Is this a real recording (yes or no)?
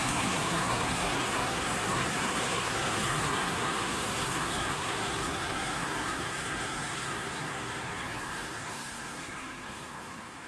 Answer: no